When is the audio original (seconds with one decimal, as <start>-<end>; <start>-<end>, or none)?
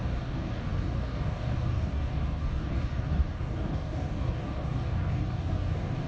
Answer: none